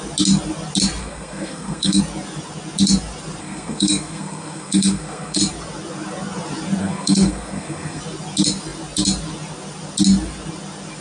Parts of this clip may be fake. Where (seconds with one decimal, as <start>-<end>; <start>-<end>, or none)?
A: 1.0-2.0; 3.4-5.4; 6.8-8.0